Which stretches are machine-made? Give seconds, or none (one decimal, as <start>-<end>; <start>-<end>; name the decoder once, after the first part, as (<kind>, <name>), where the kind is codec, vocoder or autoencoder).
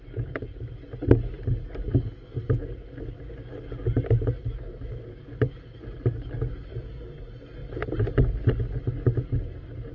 none